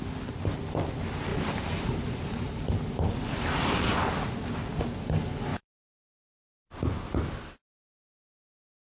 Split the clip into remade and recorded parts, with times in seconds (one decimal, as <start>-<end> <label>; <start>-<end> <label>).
0.0-1.3 recorded; 1.3-4.8 remade; 4.8-5.5 recorded; 5.5-7.3 remade; 7.3-8.8 recorded